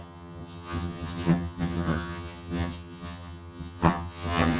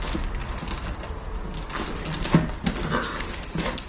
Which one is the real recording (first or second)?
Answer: second